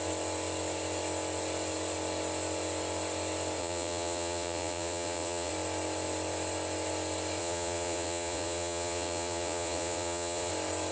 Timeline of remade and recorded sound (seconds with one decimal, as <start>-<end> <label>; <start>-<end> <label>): 0.0-3.6 recorded; 3.6-5.5 remade; 5.5-7.4 recorded; 7.4-10.5 remade; 10.5-10.9 recorded